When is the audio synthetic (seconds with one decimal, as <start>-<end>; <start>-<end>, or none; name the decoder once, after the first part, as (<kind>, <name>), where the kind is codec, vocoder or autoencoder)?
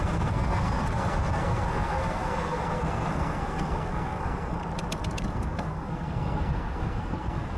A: 0.0-4.6 (codec, SNAC); 5.3-7.6